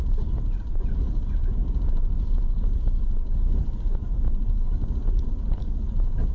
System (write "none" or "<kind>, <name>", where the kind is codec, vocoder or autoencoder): vocoder, BigVGAN v2